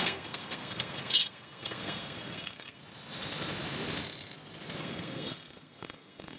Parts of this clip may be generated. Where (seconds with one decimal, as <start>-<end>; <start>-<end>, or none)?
0.0-2.8; 4.8-6.4